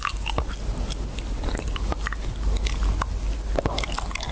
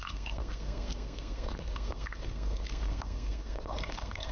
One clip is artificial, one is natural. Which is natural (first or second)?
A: first